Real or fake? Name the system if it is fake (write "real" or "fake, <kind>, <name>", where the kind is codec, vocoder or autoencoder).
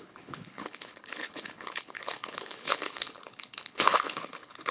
fake, codec, HILCodec